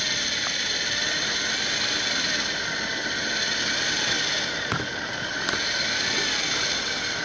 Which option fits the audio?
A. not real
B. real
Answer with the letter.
B